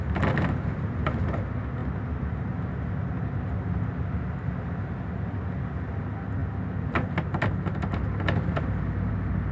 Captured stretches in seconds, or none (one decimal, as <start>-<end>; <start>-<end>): 0.0-9.5